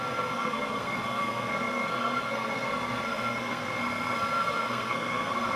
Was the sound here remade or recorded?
remade